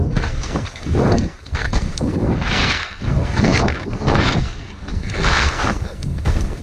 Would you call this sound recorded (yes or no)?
no